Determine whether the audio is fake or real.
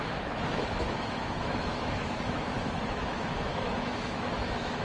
fake